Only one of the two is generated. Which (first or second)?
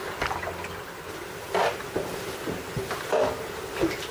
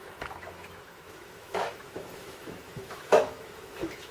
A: second